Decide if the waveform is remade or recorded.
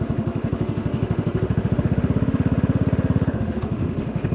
remade